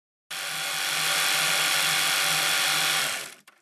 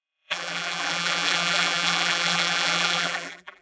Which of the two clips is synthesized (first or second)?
second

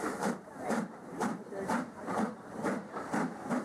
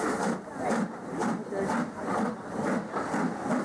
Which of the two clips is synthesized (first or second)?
first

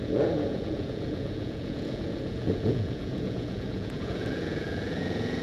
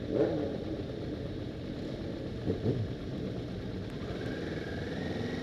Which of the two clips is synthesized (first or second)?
first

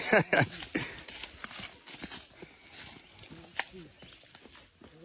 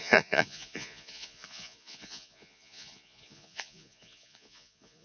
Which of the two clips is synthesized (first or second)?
second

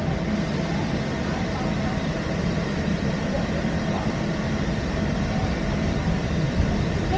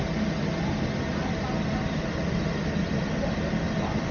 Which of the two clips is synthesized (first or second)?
first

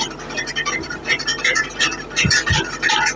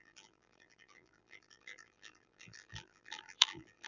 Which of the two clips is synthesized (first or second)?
second